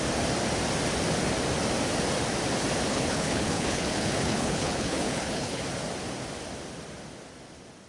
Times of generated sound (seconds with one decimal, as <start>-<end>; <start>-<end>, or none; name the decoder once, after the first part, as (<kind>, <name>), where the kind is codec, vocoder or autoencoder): 2.9-5.6 (codec, HILCodec)